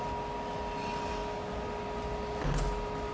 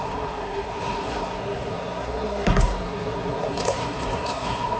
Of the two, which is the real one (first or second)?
first